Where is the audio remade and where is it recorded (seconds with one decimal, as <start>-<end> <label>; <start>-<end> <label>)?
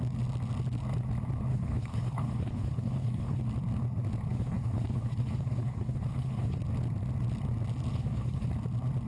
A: 0.0-1.5 recorded; 1.5-3.4 remade; 3.4-4.3 recorded; 4.3-6.6 remade; 6.6-7.9 recorded; 7.9-8.5 remade; 8.5-9.1 recorded